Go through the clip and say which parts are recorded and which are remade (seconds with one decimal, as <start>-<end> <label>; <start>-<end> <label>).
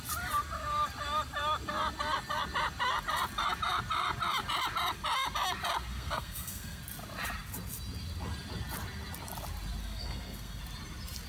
0.0-5.9 recorded; 5.9-6.8 remade; 6.8-9.8 recorded; 9.8-10.6 remade; 10.6-11.3 recorded